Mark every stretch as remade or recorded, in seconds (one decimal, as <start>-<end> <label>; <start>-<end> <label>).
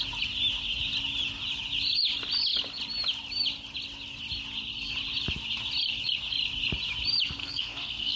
0.0-7.4 recorded; 7.4-8.2 remade